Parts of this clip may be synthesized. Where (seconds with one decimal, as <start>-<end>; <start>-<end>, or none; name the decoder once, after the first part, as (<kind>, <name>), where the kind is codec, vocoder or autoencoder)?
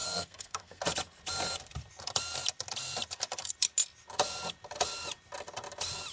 0.0-0.8 (codec, SNAC)